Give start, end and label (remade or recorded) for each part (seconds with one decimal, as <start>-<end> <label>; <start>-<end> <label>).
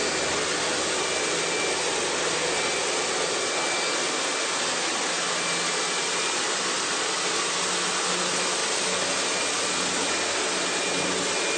0.0-11.6 recorded